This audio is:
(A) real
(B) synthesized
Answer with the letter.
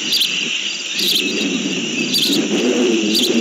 B